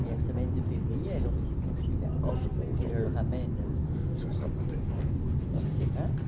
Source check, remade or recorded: recorded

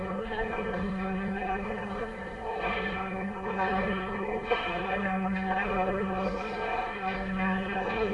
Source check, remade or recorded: remade